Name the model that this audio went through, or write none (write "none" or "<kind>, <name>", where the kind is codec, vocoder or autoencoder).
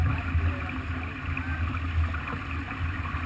none